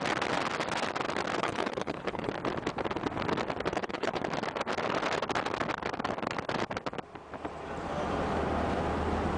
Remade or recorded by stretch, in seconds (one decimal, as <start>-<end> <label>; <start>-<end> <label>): 0.0-1.4 recorded; 1.4-2.3 remade; 2.3-3.7 recorded; 3.7-4.2 remade; 4.2-9.4 recorded